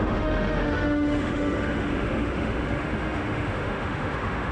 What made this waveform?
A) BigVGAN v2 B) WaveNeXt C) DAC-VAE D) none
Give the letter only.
C